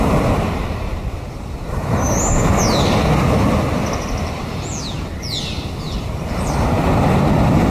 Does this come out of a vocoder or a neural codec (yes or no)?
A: no